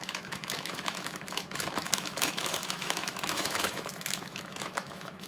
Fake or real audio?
fake